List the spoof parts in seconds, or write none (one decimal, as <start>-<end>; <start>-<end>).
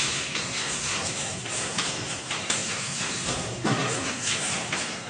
0.0-5.1